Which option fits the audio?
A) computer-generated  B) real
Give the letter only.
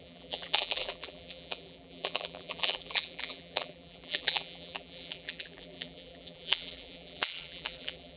A